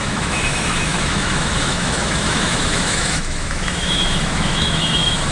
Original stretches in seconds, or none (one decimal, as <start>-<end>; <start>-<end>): none